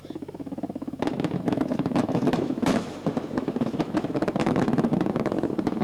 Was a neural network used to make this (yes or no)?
yes